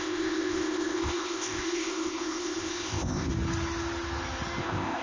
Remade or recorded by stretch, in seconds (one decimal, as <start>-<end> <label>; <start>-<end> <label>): 0.0-3.3 remade; 3.3-4.6 recorded; 4.6-5.0 remade